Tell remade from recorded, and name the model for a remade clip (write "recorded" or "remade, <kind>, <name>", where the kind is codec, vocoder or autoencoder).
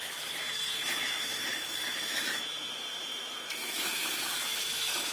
remade, autoencoder, DAC-VAE